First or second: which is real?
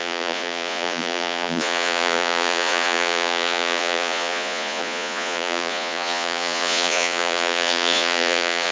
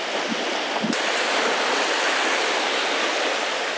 second